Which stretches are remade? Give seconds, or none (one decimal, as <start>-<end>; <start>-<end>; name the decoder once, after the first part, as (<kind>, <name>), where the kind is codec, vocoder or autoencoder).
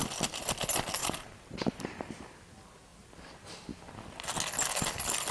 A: 1.0-2.2 (vocoder, BigVGAN v2)